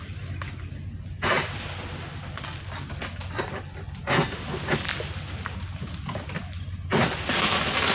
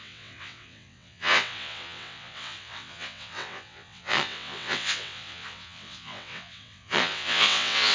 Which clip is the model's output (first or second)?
second